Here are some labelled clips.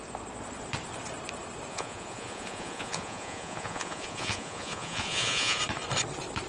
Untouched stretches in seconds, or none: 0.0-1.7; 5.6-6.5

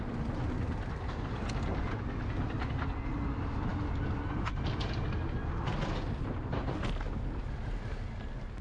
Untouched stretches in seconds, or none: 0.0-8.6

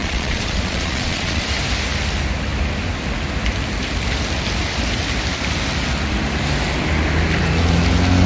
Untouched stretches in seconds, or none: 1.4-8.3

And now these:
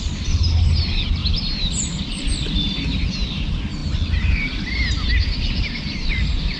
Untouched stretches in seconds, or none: 0.0-6.6